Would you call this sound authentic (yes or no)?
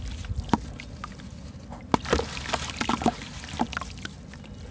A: yes